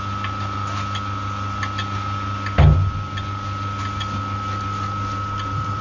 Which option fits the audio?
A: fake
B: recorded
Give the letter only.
B